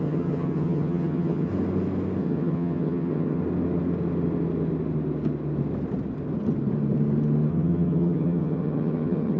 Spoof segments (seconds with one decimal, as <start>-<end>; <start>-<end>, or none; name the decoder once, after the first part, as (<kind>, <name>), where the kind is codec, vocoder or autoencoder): 0.0-1.5 (vocoder, HiFi-GAN); 2.2-3.4; 7.5-9.4